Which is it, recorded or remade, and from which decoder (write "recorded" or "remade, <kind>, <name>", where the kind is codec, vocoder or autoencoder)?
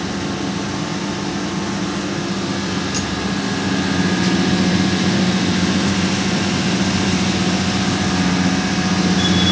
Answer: recorded